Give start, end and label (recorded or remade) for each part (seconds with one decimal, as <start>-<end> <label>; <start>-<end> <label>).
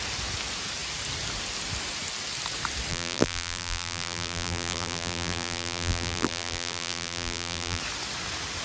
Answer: 0.0-2.9 recorded; 2.9-7.8 remade; 7.8-8.6 recorded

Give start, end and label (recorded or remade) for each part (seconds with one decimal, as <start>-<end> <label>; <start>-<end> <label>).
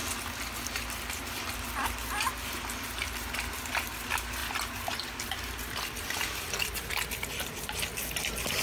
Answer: 0.0-4.4 recorded; 4.4-6.9 remade; 6.9-8.6 recorded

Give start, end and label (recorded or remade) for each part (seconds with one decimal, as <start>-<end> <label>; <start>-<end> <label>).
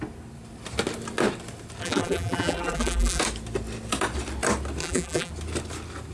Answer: 0.0-1.8 recorded; 1.8-3.2 remade; 3.2-4.8 recorded; 4.8-5.3 remade; 5.3-6.1 recorded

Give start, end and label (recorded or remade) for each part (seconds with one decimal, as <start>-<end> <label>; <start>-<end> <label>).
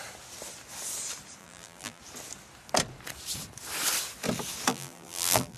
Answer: 0.0-1.4 recorded; 1.4-2.0 remade; 2.0-4.7 recorded; 4.7-5.6 remade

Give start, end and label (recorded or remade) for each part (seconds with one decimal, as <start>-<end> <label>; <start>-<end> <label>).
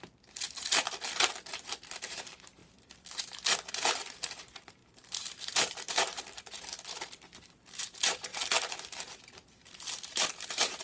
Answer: 0.0-2.6 remade; 2.6-3.7 recorded; 3.7-10.8 remade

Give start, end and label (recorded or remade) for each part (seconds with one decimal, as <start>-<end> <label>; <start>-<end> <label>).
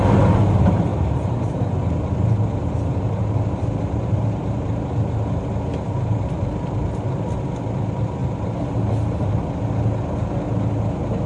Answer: 0.0-0.9 recorded; 0.9-4.8 remade; 4.8-5.7 recorded; 5.7-7.4 remade; 7.4-8.2 recorded; 8.2-9.3 remade; 9.3-11.3 recorded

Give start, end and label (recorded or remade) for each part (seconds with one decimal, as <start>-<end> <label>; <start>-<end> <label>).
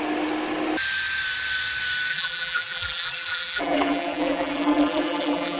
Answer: 0.0-2.1 recorded; 2.1-5.6 remade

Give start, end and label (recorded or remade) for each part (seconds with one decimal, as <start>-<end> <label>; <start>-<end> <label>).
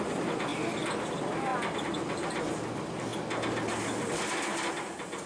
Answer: 0.0-0.5 remade; 0.5-1.0 recorded; 1.0-3.1 remade; 3.1-3.7 recorded; 3.7-5.3 remade